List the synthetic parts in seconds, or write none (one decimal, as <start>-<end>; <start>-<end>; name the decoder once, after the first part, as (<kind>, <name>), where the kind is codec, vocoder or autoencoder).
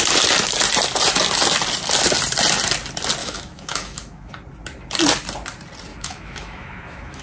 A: 3.2-4.3 (autoencoder, DAC-VAE); 5.9-7.2